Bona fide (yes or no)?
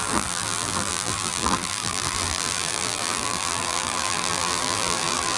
no